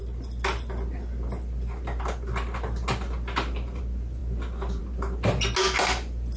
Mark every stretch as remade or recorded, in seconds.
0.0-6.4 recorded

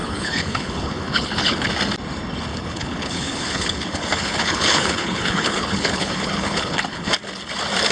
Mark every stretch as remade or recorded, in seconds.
0.0-1.7 remade; 1.7-2.5 recorded; 2.5-7.1 remade; 7.1-7.9 recorded